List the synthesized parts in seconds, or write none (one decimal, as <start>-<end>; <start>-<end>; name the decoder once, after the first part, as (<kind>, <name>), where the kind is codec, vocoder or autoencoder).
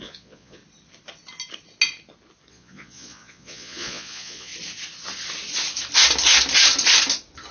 0.0-0.6 (vocoder, Vocos); 2.5-4.5